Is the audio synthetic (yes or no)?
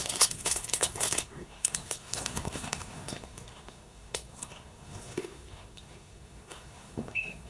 yes